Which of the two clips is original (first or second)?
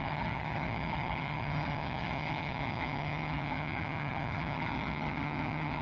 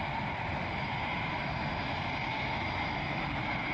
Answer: second